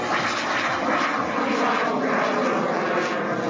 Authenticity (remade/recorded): recorded